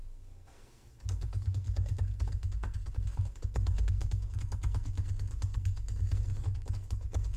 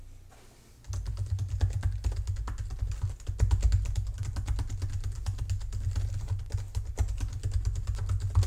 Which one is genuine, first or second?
second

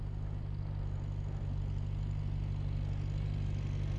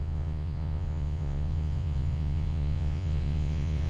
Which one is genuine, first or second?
first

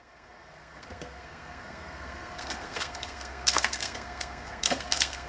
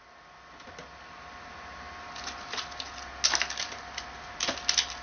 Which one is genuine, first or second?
second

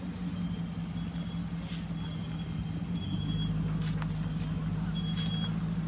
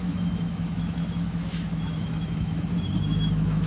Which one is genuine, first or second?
first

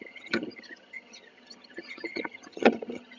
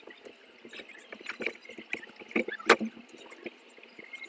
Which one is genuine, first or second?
second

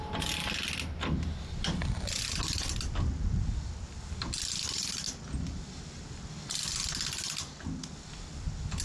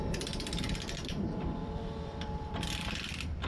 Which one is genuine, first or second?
first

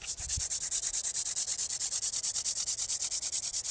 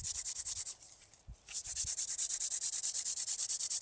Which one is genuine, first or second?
first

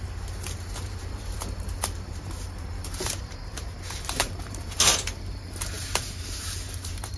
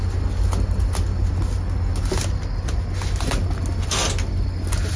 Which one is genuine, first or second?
second